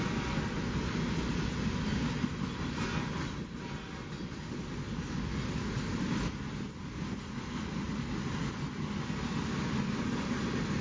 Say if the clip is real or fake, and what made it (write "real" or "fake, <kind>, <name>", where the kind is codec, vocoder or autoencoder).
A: real